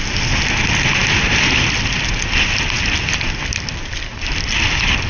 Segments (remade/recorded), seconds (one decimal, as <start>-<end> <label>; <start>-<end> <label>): 0.0-5.1 recorded